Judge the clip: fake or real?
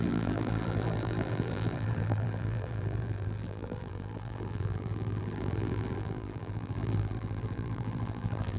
fake